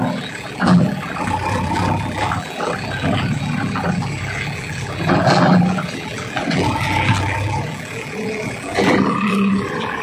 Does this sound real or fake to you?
fake